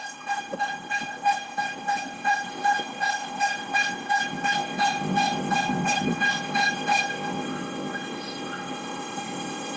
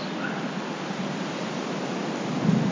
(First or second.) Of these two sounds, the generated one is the first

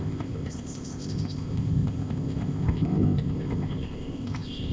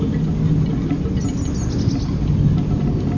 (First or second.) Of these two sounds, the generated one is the first